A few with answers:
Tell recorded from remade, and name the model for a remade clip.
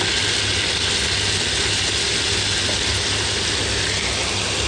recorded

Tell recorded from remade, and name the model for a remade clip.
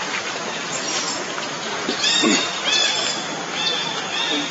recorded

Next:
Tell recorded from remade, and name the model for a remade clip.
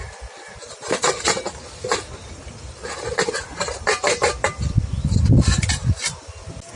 recorded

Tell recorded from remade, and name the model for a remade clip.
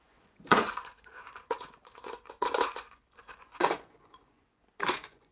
remade, vocoder, Vocos